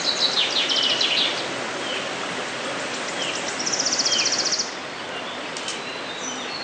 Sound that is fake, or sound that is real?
real